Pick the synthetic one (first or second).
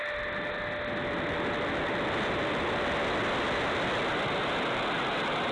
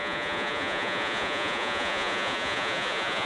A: second